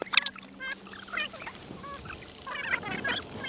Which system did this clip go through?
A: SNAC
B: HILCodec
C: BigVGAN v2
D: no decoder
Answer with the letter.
D